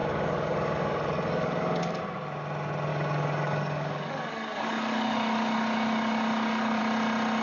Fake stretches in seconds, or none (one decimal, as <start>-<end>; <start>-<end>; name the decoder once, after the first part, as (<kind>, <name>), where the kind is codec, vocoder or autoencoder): 0.0-2.0 (codec, DAC); 2.9-6.8